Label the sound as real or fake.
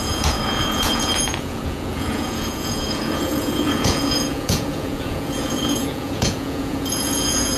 fake